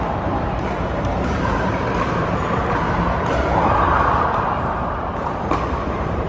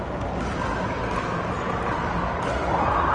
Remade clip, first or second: first